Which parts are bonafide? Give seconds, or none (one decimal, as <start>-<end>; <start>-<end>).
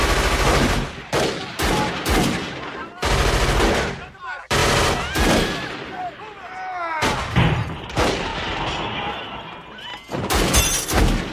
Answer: 0.0-11.3